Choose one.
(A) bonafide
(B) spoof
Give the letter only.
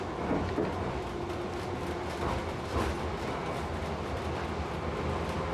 A